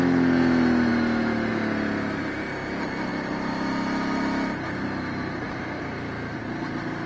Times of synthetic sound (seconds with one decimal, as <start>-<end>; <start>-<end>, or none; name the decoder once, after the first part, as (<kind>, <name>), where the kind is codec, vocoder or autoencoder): none